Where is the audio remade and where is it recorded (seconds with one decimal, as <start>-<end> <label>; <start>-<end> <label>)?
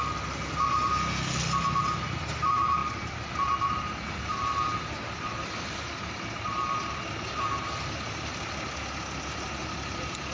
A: 0.0-2.8 recorded; 2.8-3.3 remade; 3.3-10.3 recorded